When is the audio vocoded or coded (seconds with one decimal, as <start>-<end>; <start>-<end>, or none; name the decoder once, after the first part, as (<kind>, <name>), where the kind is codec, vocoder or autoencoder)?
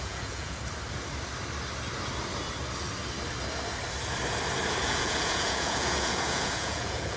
0.0-0.6 (vocoder, Vocos); 4.8-7.2